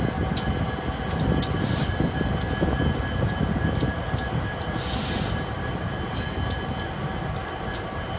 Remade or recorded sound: recorded